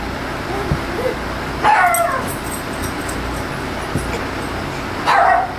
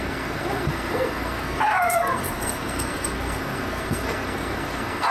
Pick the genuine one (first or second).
first